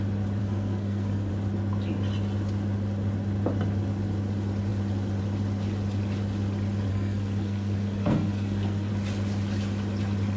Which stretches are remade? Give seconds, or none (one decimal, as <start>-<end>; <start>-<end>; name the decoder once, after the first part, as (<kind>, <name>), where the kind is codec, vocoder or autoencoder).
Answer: 0.4-1.3 (codec, SNAC); 6.9-8.9

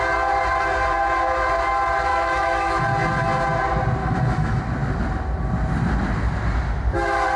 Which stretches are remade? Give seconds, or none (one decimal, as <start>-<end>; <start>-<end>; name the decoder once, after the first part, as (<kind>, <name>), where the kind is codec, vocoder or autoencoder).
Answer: 2.1-2.8 (autoencoder, DAC-VAE); 4.0-4.6

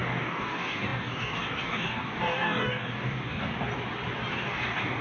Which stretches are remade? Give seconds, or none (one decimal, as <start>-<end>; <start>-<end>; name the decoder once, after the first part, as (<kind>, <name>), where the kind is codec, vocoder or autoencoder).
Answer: 0.0-3.5 (codec, DAC); 4.3-5.0

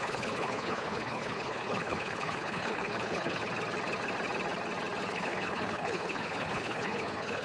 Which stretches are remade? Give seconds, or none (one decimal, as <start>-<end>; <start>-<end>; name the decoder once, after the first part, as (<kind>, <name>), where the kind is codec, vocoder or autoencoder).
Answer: 0.0-3.4 (codec, HILCodec); 5.1-7.4

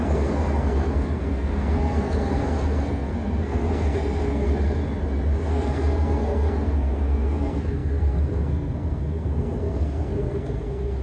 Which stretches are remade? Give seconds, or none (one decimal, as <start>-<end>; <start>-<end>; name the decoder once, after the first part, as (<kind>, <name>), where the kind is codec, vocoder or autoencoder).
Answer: 0.0-4.8 (codec, SNAC); 5.5-11.0